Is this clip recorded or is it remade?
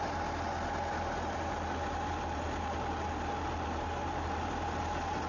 recorded